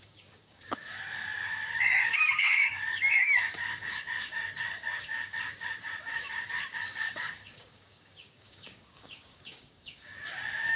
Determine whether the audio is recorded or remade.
remade